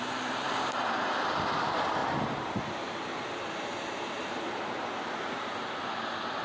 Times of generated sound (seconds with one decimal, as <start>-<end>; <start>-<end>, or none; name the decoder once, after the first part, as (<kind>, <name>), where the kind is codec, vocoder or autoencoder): 2.0-5.8 (vocoder, BigVGAN v2)